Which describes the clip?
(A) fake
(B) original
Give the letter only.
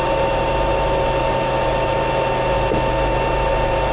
B